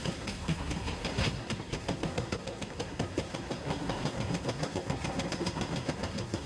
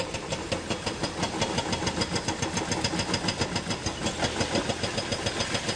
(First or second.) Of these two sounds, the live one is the second